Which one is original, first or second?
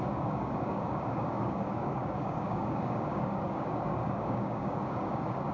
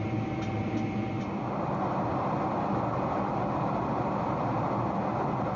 second